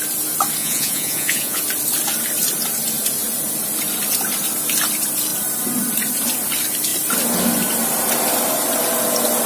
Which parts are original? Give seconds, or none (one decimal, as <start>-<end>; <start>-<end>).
0.0-0.6; 1.6-9.5

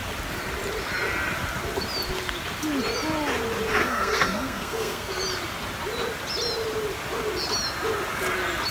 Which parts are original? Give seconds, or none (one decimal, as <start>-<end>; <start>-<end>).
0.0-3.8; 5.2-8.7

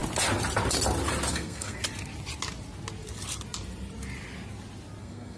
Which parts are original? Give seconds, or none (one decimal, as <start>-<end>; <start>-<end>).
0.0-1.3; 1.8-5.0

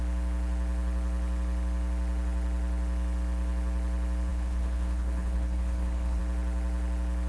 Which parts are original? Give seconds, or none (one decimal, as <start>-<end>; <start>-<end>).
0.0-4.3; 6.2-7.3

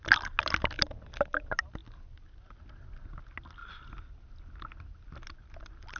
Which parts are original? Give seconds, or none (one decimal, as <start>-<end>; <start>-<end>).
0.0-6.0